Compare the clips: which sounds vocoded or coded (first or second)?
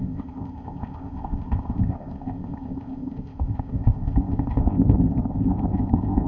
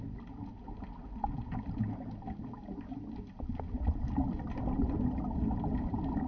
first